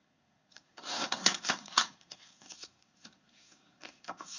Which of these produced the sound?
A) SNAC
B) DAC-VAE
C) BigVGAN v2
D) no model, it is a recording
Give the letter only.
A